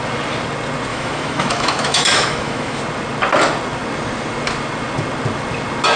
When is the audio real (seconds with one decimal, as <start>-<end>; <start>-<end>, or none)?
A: 0.0-0.9; 2.8-6.0